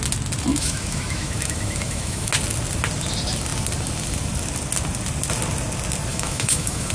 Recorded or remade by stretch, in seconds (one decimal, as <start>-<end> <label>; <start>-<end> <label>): 0.0-0.5 recorded; 0.5-2.3 remade; 2.3-6.1 recorded; 6.1-6.9 remade